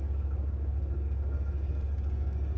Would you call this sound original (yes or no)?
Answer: no